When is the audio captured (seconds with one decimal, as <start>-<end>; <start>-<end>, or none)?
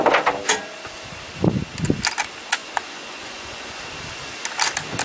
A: 0.0-2.6; 3.8-5.0